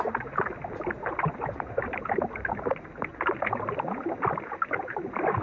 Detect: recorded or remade recorded